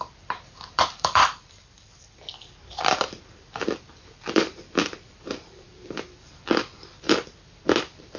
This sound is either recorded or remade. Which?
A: remade